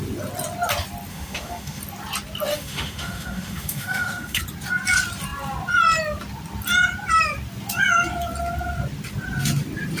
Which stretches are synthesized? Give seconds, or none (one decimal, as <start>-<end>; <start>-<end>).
1.1-1.8; 2.5-4.4